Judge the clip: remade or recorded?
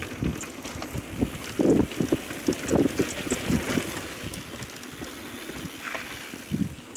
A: recorded